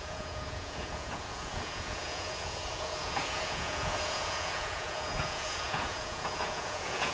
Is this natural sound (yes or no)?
no